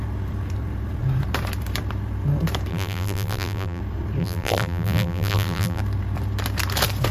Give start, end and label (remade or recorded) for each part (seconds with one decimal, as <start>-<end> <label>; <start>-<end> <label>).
0.0-2.7 recorded; 2.7-3.8 remade; 3.8-4.2 recorded; 4.2-5.8 remade; 5.8-7.1 recorded